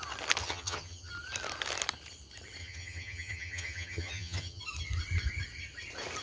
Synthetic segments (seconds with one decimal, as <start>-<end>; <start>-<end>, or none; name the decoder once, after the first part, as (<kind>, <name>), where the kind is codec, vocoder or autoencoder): 0.4-1.1 (vocoder, HiFi-GAN); 2.6-4.6